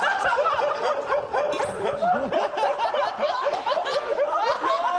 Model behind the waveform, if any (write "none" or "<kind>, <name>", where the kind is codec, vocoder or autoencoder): none